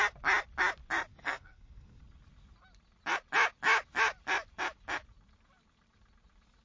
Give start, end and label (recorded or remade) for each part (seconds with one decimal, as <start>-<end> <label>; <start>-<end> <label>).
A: 0.0-1.1 recorded; 1.1-2.0 remade; 2.0-6.6 recorded